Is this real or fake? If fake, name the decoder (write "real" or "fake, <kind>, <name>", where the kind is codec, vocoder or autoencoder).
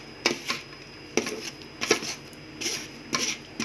real